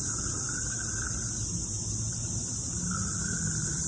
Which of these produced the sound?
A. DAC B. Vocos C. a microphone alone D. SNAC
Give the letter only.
C